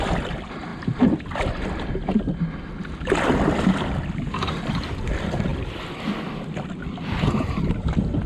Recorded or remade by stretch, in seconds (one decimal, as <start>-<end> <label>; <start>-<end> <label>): 0.0-0.7 recorded; 0.7-1.5 remade; 1.5-5.5 recorded; 5.5-6.7 remade; 6.7-8.3 recorded